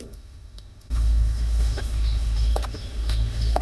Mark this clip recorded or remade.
remade